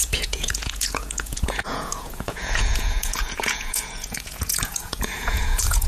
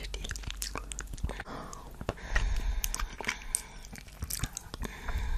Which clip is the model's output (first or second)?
first